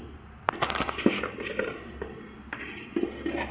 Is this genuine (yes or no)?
yes